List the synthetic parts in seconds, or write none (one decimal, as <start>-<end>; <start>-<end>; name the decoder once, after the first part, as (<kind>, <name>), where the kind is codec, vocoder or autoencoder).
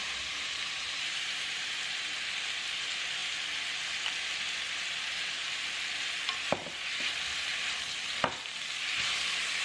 0.0-2.2 (vocoder, BigVGAN v2)